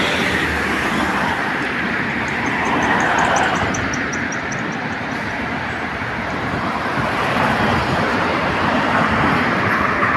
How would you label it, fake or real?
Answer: fake